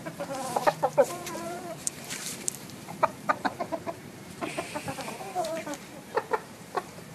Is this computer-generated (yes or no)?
yes